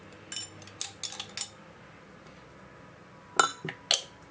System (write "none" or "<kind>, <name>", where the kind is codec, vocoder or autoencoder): none